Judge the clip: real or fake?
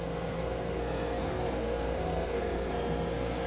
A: fake